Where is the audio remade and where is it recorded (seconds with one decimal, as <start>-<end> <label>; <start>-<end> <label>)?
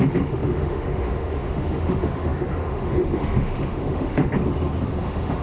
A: 0.0-4.3 remade; 4.3-5.0 recorded; 5.0-5.4 remade